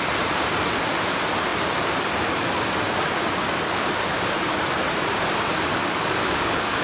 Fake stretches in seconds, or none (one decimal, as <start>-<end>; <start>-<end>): 5.7-6.8